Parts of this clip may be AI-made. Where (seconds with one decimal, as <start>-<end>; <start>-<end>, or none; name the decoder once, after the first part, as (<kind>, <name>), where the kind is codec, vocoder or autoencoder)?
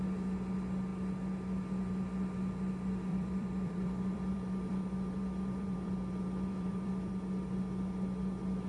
3.1-7.1 (vocoder, BigVGAN v2)